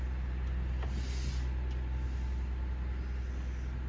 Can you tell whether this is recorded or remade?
recorded